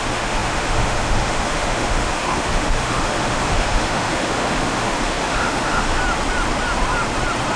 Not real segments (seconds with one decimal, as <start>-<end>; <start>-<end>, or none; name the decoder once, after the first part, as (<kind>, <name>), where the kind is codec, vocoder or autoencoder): 0.0-6.0 (autoencoder, DAC-VAE)